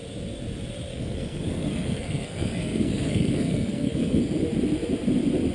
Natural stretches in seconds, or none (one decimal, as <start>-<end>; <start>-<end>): 0.0-0.9; 4.2-5.5